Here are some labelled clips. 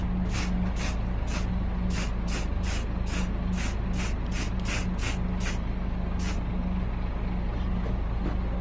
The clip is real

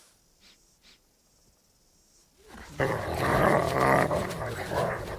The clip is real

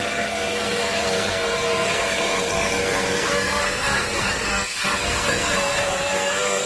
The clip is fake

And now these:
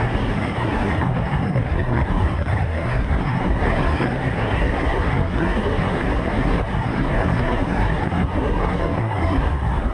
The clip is fake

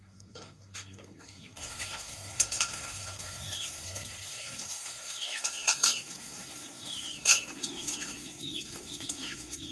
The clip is fake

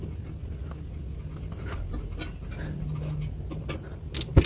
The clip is real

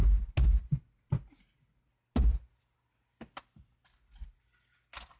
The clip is real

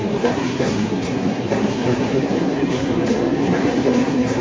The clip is fake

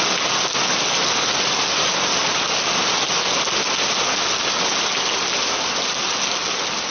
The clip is real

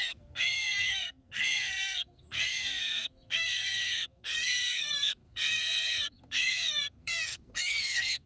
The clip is fake